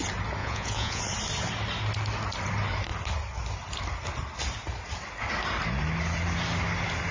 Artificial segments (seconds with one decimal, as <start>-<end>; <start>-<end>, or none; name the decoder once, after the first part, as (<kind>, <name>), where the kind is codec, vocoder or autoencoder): 0.4-1.0 (vocoder, Vocos)